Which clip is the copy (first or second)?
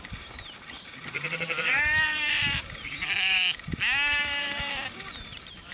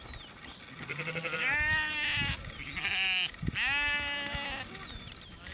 first